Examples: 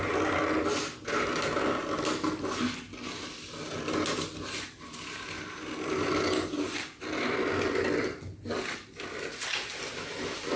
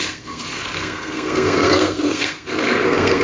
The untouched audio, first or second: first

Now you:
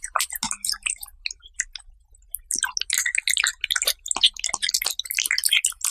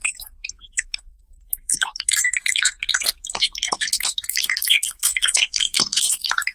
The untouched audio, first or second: first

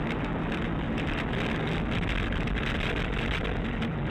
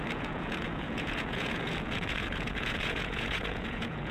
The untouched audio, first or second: first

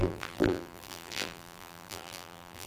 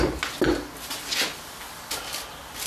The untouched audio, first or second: second